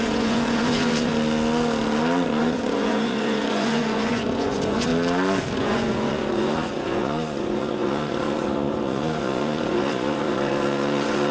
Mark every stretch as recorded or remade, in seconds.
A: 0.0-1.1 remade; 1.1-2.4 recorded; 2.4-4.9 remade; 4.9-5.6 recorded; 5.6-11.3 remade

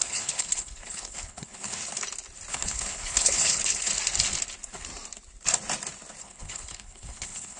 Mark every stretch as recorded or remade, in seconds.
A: 0.0-1.8 remade; 1.8-2.5 recorded; 2.5-3.9 remade; 3.9-6.2 recorded; 6.2-7.6 remade